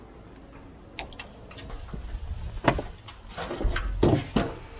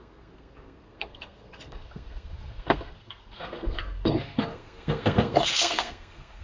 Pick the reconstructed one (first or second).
second